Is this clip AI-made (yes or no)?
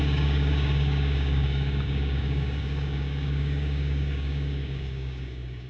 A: yes